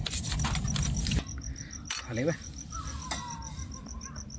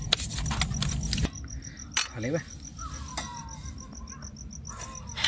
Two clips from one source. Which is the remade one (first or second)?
first